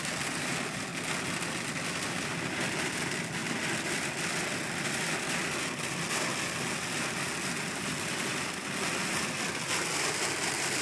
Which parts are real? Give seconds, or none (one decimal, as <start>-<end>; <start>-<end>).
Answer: 0.0-10.8